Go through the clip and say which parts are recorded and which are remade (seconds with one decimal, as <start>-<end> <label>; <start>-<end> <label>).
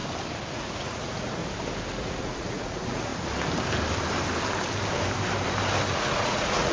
0.0-0.5 recorded; 0.5-1.4 remade; 1.4-2.0 recorded; 2.0-3.1 remade; 3.1-5.9 recorded; 5.9-6.7 remade